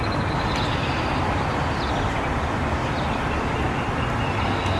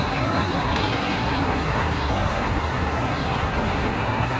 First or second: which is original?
first